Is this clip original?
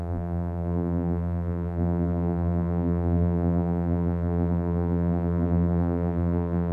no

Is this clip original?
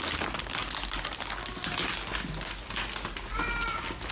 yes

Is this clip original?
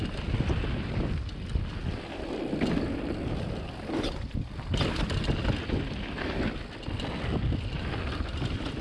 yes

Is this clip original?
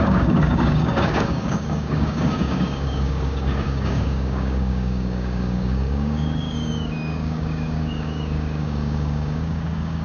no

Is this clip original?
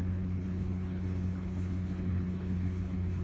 no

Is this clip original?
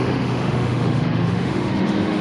no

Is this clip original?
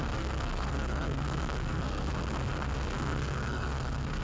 no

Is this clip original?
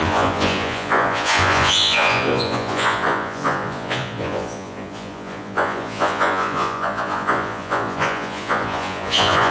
no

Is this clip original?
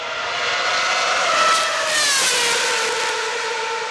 yes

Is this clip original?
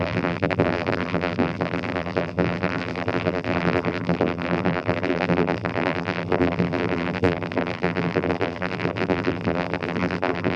no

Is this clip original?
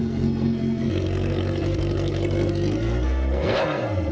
no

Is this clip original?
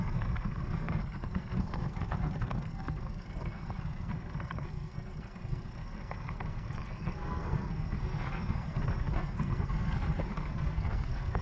no